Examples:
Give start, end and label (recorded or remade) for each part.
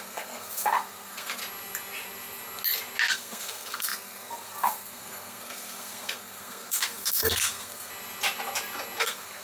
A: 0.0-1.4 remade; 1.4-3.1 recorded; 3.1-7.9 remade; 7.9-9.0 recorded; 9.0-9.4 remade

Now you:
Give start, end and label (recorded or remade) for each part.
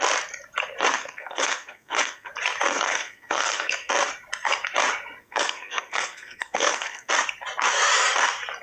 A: 0.0-1.0 recorded; 1.0-2.3 remade; 2.3-2.7 recorded; 2.7-3.9 remade; 3.9-5.2 recorded; 5.2-7.1 remade; 7.1-8.6 recorded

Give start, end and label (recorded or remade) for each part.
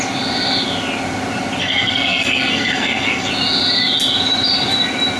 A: 0.0-1.6 recorded; 1.6-3.3 remade; 3.3-5.2 recorded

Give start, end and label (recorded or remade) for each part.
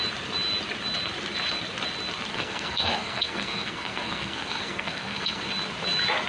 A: 0.0-2.3 recorded; 2.3-5.5 remade; 5.5-6.3 recorded